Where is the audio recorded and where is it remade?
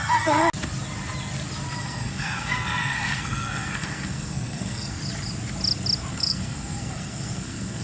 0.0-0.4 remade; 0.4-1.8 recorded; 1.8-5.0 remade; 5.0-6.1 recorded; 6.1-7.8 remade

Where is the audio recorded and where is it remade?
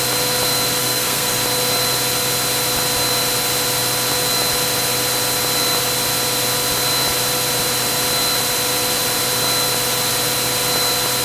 0.0-0.8 recorded; 0.8-1.4 remade; 1.4-11.2 recorded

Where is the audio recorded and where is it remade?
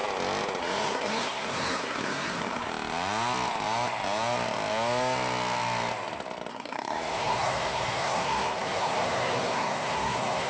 0.0-0.6 recorded; 0.6-2.7 remade; 2.7-6.5 recorded; 6.5-10.5 remade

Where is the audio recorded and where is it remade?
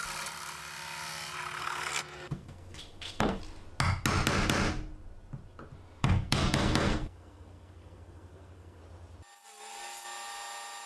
0.0-1.6 recorded; 1.6-3.4 remade; 3.4-6.0 recorded; 6.0-8.8 remade; 8.8-10.9 recorded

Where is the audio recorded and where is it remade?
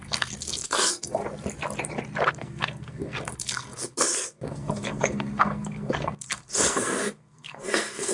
0.0-1.2 remade; 1.2-2.3 recorded; 2.3-8.1 remade